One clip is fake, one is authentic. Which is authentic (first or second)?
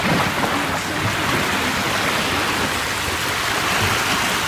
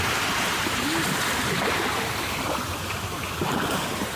first